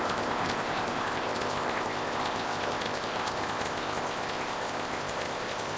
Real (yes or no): no